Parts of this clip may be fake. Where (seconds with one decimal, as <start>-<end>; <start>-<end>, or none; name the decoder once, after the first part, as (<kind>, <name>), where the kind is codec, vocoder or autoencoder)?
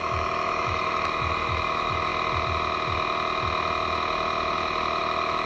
0.0-2.1 (autoencoder, DAC-VAE); 5.0-5.5